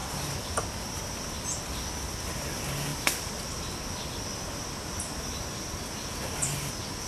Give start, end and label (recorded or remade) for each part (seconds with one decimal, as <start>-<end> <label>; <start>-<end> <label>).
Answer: 0.0-7.1 recorded